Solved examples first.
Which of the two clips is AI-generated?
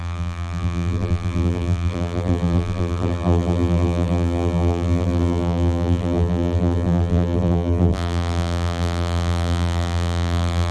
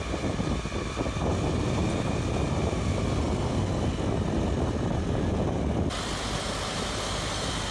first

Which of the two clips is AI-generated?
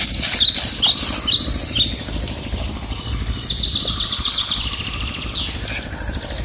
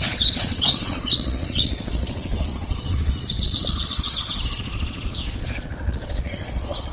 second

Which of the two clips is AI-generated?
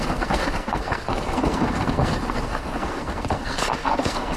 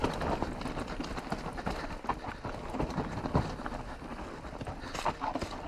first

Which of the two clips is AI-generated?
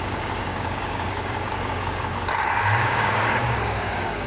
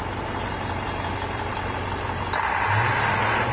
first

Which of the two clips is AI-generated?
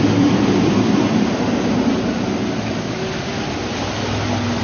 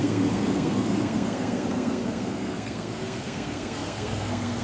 second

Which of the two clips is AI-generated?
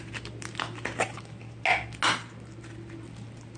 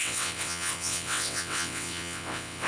second